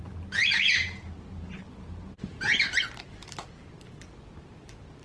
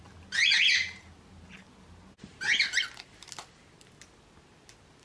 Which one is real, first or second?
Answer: second